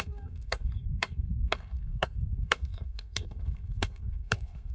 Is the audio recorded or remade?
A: remade